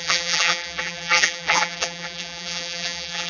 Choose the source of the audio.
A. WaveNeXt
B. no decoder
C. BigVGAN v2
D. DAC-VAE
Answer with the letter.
C